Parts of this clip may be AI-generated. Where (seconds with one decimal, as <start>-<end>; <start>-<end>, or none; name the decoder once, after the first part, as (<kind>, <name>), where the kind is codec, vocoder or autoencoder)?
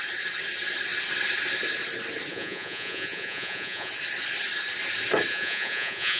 2.3-3.9 (vocoder, Vocos); 5.3-6.2